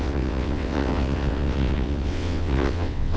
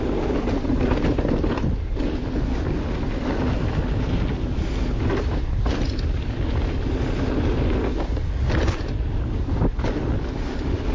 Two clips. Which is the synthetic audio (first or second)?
first